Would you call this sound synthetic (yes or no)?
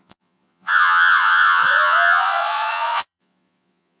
yes